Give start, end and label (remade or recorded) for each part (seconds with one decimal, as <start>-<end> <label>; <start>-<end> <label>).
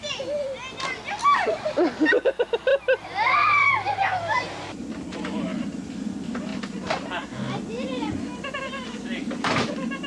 0.0-10.1 recorded